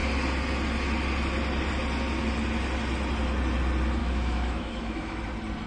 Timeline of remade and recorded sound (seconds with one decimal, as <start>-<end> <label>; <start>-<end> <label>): 0.0-4.0 recorded; 4.0-5.2 remade; 5.2-5.7 recorded